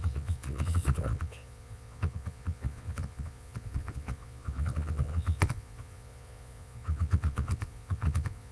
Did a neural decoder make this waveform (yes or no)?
yes